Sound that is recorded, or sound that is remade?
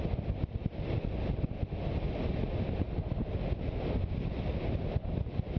recorded